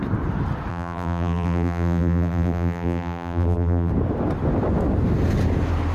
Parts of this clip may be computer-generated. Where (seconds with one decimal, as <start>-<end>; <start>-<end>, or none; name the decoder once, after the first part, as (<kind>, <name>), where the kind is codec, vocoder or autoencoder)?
0.7-3.9 (vocoder, BigVGAN v2)